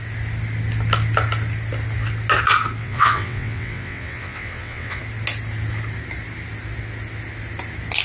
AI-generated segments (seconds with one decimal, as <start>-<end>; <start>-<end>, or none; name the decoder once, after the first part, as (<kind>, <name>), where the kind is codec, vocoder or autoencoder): 2.8-5.0 (vocoder, WaveNeXt)